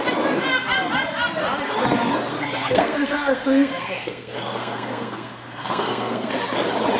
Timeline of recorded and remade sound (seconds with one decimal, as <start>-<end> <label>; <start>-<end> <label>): 0.0-2.3 recorded; 2.3-6.3 remade; 6.3-7.0 recorded